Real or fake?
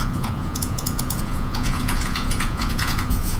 fake